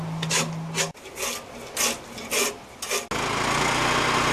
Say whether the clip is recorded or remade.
recorded